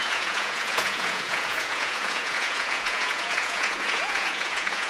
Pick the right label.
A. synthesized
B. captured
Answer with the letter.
A